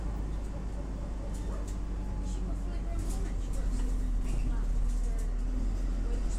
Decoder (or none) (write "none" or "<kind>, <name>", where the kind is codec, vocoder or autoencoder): none